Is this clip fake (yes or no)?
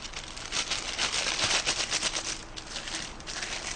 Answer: no